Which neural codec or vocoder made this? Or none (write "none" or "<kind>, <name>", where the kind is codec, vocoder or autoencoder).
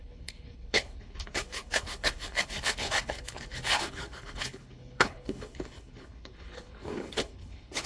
codec, HILCodec